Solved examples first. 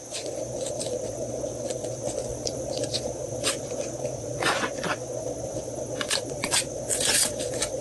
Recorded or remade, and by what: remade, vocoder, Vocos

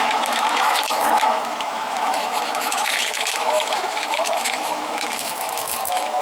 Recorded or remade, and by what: remade, autoencoder, DAC-VAE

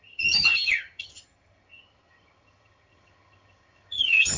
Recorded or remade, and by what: remade, vocoder, HiFi-GAN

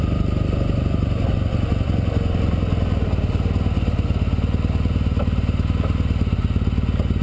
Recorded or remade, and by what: recorded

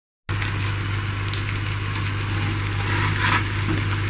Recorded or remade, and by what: recorded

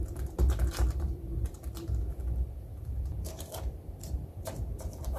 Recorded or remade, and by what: remade, vocoder, BigVGAN v2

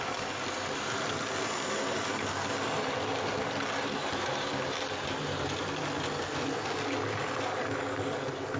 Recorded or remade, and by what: recorded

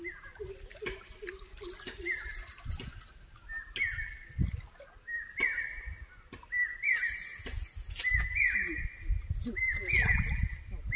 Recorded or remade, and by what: recorded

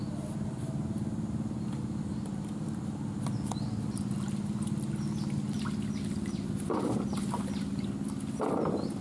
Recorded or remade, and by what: recorded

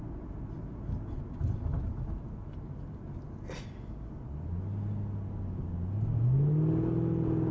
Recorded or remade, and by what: recorded